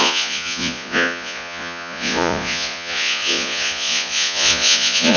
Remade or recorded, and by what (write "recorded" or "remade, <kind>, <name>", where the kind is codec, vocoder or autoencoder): remade, vocoder, Vocos